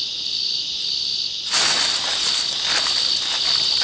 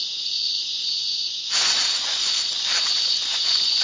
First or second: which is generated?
second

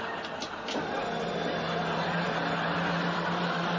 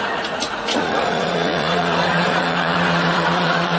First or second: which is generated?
second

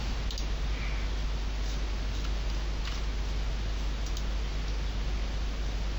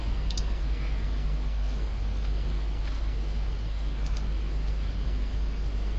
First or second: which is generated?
second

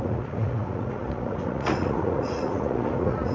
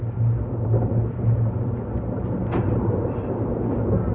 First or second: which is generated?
first